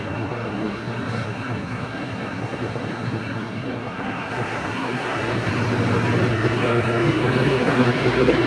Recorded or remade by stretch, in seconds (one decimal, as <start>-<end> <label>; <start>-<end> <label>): 0.0-5.5 remade; 5.5-6.3 recorded; 6.3-8.5 remade